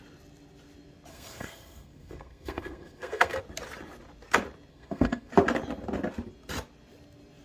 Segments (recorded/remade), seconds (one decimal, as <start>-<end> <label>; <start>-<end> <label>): 0.0-1.1 recorded; 1.1-3.4 remade; 3.4-4.7 recorded; 4.7-5.3 remade; 5.3-7.4 recorded